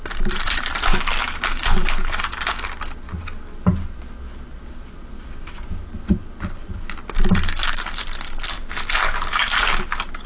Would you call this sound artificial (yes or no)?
no